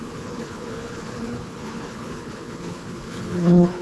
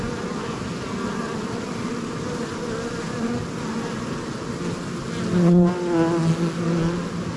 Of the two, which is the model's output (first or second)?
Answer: first